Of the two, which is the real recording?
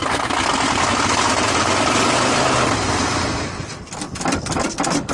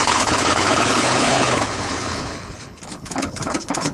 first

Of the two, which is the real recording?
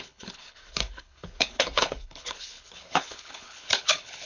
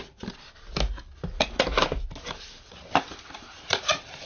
second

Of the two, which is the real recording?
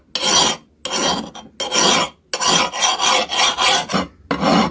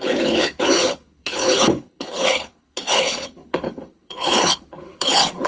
first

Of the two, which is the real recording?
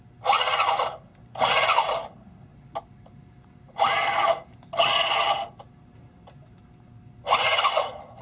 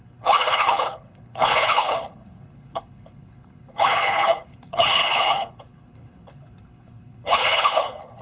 first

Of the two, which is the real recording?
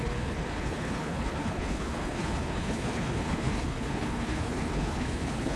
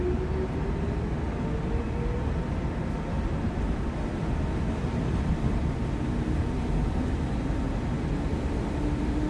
second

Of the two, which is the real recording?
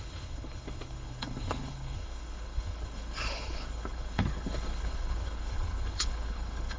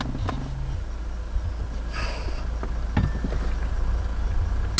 second